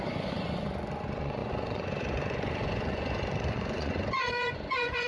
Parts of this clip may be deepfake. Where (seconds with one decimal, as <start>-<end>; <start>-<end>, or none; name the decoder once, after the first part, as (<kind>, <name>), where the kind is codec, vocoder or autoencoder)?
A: 0.0-5.1 (vocoder, Vocos)